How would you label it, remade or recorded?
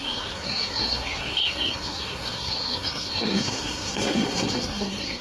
remade